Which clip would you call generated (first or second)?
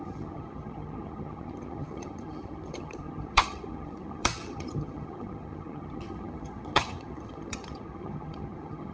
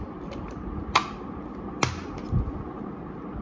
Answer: first